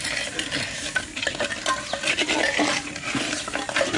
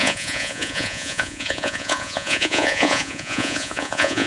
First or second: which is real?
first